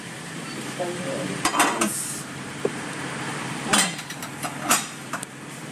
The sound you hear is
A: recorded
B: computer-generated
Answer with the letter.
B